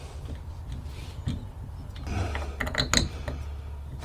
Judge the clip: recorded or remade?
recorded